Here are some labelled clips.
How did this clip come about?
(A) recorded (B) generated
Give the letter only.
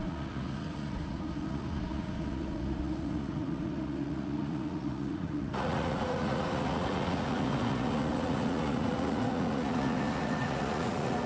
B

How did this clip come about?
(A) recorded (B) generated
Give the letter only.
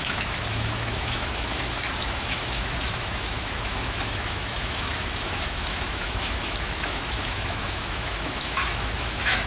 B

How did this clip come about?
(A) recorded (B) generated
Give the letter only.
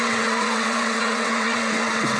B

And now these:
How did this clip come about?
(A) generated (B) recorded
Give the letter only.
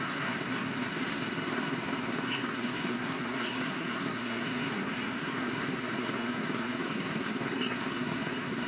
A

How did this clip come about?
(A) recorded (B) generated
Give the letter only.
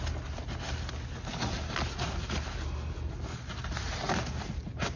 A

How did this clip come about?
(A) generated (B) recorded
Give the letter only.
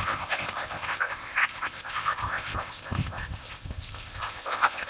A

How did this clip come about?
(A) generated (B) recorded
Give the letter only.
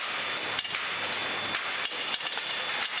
B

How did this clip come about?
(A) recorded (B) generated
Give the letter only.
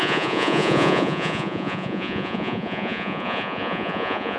B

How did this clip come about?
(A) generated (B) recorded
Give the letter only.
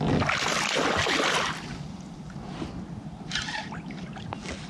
B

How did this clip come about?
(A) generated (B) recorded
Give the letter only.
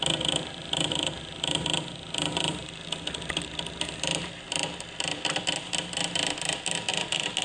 B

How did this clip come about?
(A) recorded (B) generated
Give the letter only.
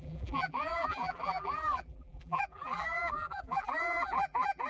B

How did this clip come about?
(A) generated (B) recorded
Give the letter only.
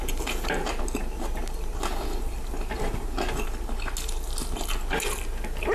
B